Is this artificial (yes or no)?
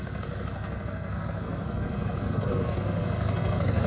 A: yes